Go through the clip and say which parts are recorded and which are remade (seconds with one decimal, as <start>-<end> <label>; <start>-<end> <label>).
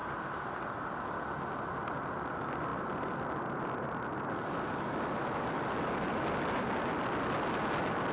0.0-8.1 recorded